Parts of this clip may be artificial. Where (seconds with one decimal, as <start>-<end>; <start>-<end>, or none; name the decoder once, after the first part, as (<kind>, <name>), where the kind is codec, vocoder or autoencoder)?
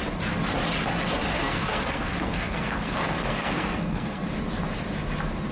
1.4-4.3 (codec, SNAC)